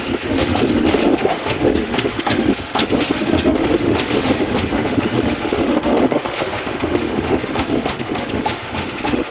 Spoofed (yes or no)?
yes